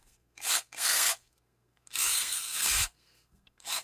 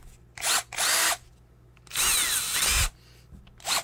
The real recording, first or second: second